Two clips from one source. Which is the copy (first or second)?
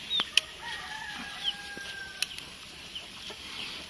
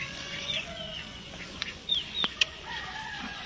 second